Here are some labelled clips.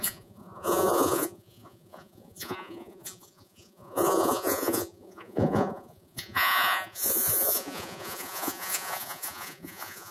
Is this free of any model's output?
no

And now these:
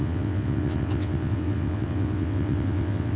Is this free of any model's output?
no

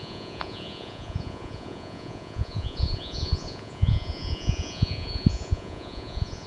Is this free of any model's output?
no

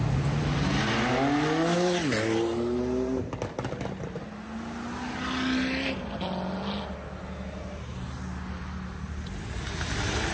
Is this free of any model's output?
yes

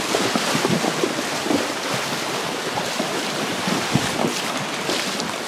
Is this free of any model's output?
yes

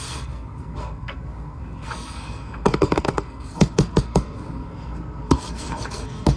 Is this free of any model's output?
no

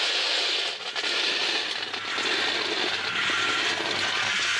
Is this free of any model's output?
yes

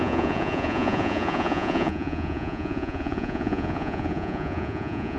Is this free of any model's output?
no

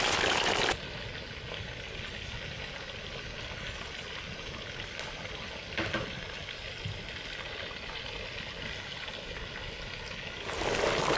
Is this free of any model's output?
yes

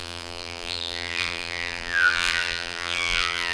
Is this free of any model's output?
no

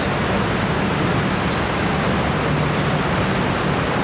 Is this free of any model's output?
yes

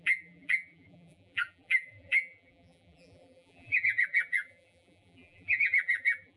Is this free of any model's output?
no